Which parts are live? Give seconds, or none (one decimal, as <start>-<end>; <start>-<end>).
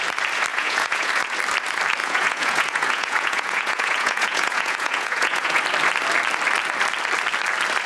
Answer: 0.0-0.5; 1.1-2.0; 5.6-7.9